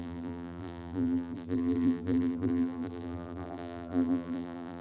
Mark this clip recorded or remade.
remade